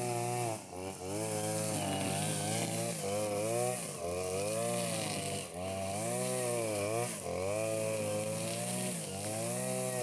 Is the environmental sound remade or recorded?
recorded